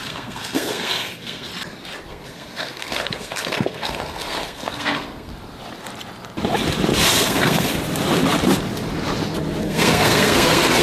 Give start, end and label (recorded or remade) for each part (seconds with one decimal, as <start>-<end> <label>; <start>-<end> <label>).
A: 0.0-1.5 remade; 1.5-2.1 recorded; 2.1-5.3 remade; 5.3-7.1 recorded; 7.1-7.7 remade; 7.7-9.6 recorded; 9.6-10.8 remade